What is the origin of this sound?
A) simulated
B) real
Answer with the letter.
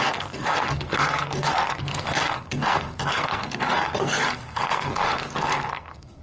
A